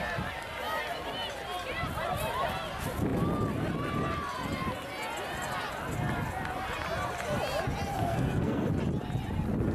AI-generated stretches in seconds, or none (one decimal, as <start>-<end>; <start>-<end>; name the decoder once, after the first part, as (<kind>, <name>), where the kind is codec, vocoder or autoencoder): 7.9-8.7 (codec, SNAC)